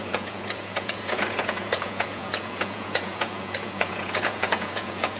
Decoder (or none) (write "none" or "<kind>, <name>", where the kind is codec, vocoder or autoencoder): vocoder, Vocos